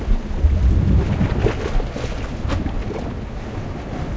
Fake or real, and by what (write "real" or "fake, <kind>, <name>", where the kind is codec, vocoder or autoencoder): real